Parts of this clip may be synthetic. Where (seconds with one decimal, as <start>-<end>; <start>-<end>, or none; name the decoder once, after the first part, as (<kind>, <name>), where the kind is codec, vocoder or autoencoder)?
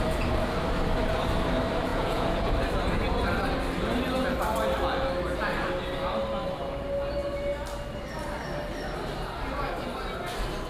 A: 1.9-2.5 (vocoder, Vocos)